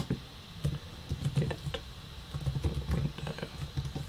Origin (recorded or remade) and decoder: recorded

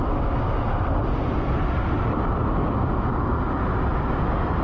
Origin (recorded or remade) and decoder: recorded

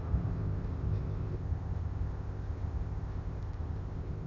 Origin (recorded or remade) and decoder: remade, codec, ZipCodec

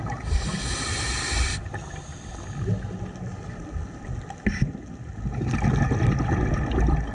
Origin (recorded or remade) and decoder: recorded